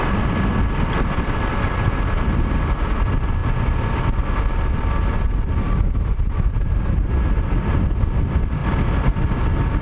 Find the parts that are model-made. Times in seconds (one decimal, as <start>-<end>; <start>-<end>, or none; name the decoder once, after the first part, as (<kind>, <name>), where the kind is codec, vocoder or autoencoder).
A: none